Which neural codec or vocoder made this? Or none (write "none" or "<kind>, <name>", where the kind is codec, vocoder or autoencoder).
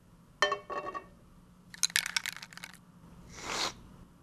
none